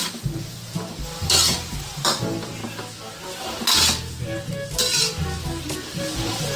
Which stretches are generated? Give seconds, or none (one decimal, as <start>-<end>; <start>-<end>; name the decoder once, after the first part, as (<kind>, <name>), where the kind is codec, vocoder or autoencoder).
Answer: 0.0-2.6 (vocoder, BigVGAN v2); 6.0-6.6